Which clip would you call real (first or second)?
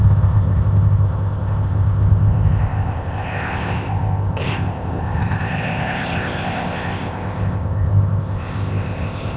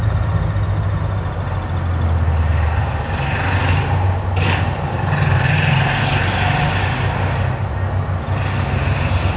second